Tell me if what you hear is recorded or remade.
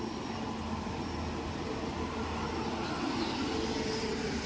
recorded